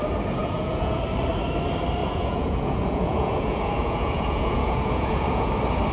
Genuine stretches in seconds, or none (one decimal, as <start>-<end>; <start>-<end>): 0.0-0.4; 1.0-2.0; 5.5-5.9